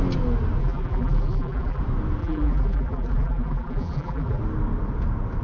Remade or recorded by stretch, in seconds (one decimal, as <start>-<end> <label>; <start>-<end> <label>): 0.0-0.6 recorded; 0.6-1.8 remade; 1.8-2.2 recorded; 2.2-4.4 remade; 4.4-5.4 recorded